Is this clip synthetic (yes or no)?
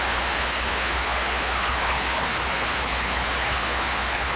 yes